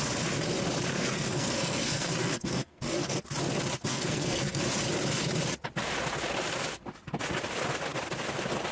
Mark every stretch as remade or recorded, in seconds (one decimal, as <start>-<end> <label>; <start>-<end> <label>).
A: 0.0-0.9 recorded; 0.9-3.1 remade; 3.1-3.9 recorded; 3.9-4.6 remade; 4.6-8.7 recorded